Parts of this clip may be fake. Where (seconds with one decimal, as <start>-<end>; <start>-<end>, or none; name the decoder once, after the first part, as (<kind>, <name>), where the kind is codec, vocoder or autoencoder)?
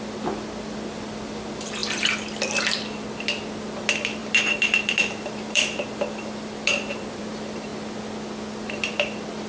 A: 4.2-7.2 (vocoder, BigVGAN v2)